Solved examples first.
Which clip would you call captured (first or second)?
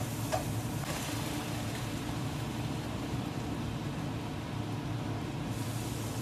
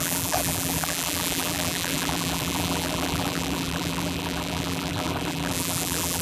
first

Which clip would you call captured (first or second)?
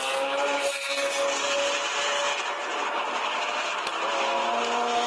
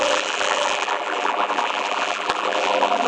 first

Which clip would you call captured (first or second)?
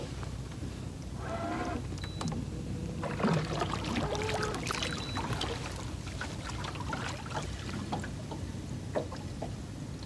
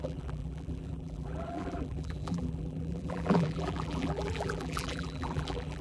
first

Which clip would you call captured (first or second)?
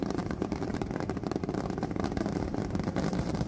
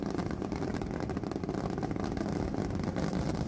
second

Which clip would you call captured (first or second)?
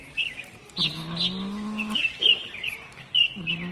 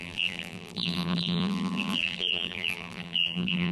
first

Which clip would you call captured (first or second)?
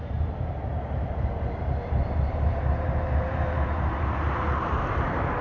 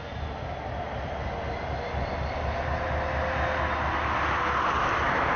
second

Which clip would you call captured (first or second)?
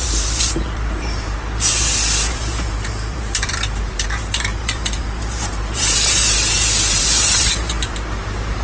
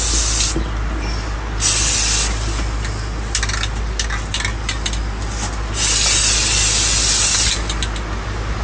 second